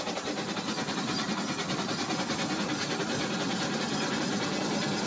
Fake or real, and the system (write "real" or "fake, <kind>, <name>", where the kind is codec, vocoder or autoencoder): real